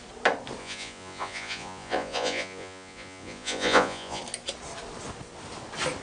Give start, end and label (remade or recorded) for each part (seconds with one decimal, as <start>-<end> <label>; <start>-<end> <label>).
0.0-0.6 recorded; 0.6-4.2 remade; 4.2-6.0 recorded